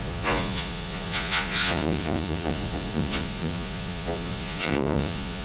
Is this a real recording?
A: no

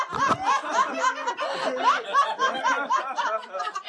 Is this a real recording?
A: yes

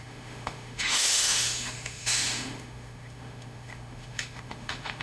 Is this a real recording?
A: no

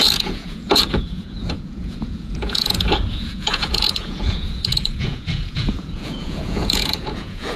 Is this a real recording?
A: no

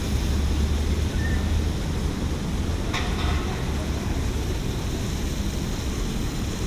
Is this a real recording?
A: yes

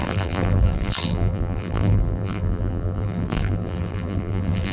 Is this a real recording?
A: no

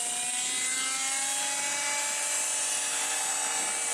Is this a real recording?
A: yes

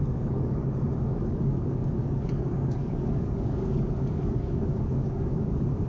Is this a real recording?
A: no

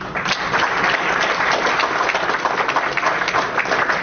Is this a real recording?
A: yes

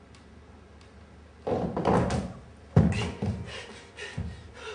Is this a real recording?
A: yes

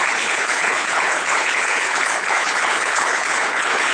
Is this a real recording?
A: no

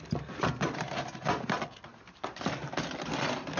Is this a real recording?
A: yes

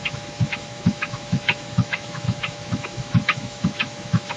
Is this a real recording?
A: no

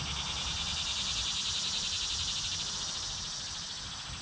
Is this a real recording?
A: yes